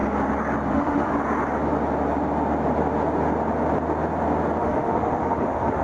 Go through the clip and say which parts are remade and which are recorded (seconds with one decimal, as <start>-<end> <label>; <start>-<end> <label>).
0.0-0.7 recorded; 0.7-1.1 remade; 1.1-4.6 recorded; 4.6-5.8 remade